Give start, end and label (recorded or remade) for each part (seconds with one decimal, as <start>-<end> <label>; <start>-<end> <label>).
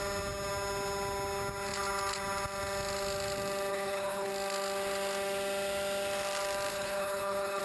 0.0-3.7 recorded; 3.7-4.3 remade; 4.3-6.7 recorded; 6.7-7.6 remade